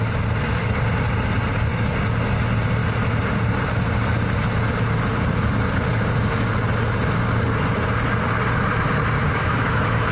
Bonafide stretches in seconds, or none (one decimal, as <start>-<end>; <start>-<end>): 0.0-9.2